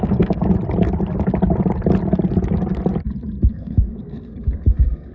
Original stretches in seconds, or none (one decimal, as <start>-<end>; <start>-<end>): 0.4-3.5